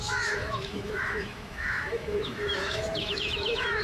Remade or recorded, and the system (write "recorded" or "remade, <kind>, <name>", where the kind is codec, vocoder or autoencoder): remade, autoencoder, DAC-VAE